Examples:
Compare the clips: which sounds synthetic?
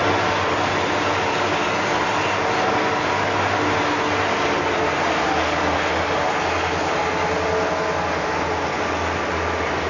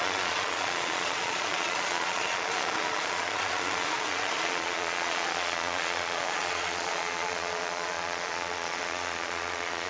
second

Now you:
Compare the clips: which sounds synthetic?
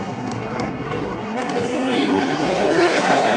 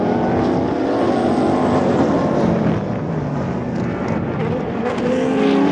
first